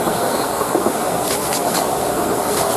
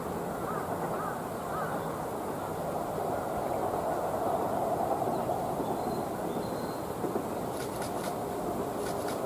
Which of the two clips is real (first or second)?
second